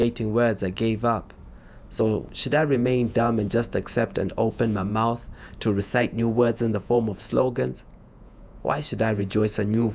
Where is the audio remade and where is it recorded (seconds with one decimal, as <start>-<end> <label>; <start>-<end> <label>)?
0.0-2.0 recorded; 2.0-4.9 remade; 4.9-5.8 recorded; 5.8-9.9 remade